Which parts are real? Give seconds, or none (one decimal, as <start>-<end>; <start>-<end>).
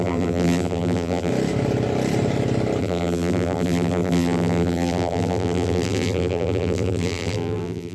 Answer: 1.3-2.8